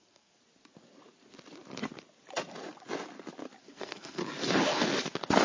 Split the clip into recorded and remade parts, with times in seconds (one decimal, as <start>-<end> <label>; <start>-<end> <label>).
0.0-0.4 remade; 0.4-3.6 recorded; 3.6-4.2 remade; 4.2-5.4 recorded